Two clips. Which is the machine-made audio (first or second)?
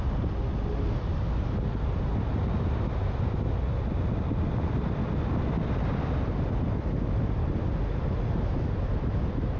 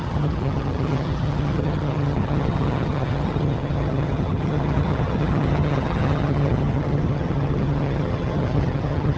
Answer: second